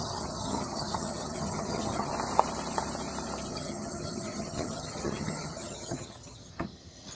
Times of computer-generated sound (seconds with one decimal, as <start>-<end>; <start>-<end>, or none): 0.0-2.1; 3.5-7.2